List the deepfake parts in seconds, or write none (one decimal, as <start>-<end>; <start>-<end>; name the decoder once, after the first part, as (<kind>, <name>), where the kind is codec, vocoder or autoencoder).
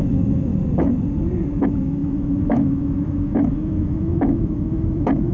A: 0.0-0.5 (autoencoder, DAC-VAE); 1.6-5.3